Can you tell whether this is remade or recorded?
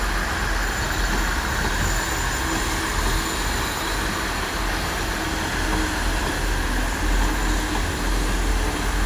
recorded